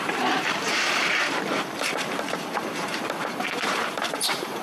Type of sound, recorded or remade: remade